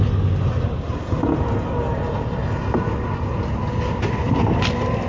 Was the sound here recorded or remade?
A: recorded